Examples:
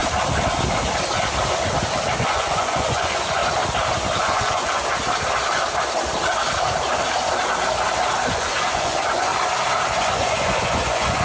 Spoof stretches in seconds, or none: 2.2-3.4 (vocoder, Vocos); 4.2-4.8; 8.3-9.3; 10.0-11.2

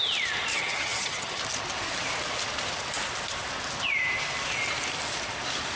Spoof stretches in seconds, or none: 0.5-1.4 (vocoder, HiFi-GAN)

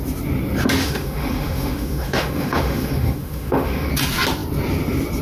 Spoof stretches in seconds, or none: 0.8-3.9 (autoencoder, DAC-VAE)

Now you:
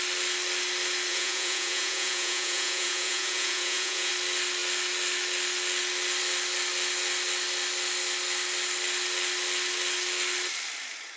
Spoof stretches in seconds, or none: 1.1-4.1 (vocoder, Vocos)